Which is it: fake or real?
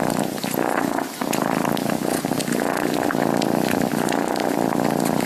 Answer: real